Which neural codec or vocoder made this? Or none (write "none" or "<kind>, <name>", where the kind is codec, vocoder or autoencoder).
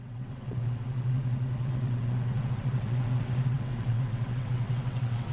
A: vocoder, WaveNeXt